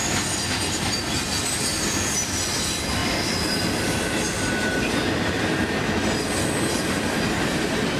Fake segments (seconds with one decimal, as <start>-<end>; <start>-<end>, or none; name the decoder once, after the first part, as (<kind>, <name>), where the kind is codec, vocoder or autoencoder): 3.0-4.5 (vocoder, BigVGAN v2)